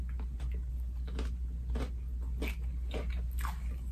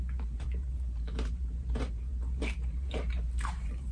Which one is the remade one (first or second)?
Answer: second